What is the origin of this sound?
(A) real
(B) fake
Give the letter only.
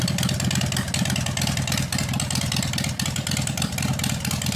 A